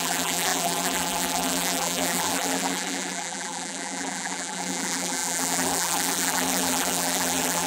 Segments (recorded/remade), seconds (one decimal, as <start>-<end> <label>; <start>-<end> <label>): 0.0-7.7 remade